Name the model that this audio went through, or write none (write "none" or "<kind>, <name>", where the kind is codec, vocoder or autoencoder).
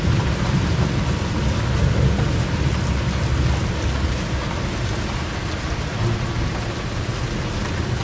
none